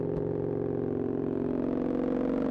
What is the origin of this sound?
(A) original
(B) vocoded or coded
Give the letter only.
A